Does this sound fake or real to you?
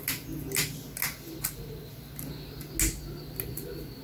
real